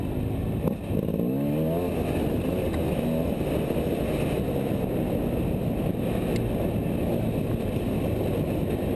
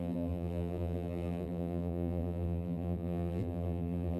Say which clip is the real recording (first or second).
first